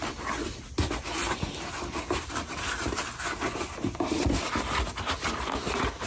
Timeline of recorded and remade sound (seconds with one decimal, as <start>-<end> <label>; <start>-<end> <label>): 0.0-6.1 recorded

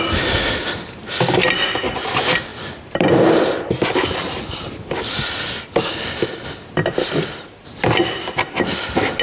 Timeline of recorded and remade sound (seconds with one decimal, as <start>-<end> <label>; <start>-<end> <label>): 0.0-9.2 recorded

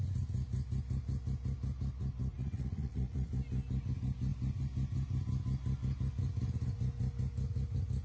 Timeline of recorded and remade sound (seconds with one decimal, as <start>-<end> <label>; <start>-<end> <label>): 0.0-2.3 recorded; 2.3-3.3 remade; 3.3-8.0 recorded

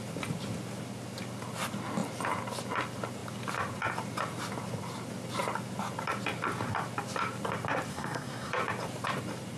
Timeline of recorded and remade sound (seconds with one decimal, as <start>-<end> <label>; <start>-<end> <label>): 0.0-7.9 recorded; 7.9-8.5 remade; 8.5-9.6 recorded

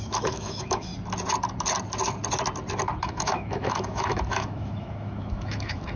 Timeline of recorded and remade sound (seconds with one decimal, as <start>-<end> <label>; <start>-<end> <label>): 0.0-0.9 remade; 0.9-3.0 recorded; 3.0-6.0 remade

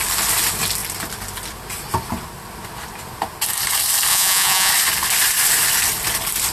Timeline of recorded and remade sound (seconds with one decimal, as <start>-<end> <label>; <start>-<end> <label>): 0.0-4.1 recorded; 4.1-4.7 remade; 4.7-6.5 recorded

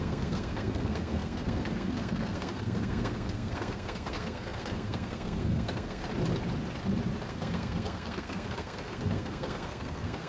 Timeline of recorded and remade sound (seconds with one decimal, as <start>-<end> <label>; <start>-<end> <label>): 0.0-6.0 remade; 6.0-7.3 recorded; 7.3-10.3 remade

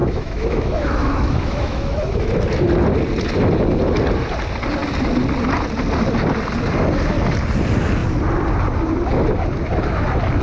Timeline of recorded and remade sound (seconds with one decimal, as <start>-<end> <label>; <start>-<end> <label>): 0.0-2.3 remade; 2.3-10.4 recorded